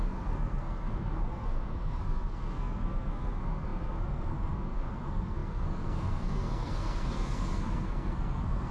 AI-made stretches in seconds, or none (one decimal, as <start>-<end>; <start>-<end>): 0.0-8.7